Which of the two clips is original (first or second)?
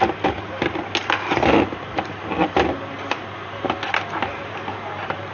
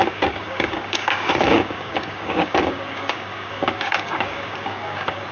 first